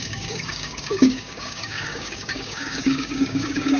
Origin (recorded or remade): remade